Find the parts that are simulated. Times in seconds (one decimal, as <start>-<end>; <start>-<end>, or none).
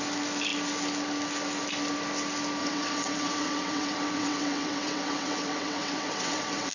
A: 2.6-6.7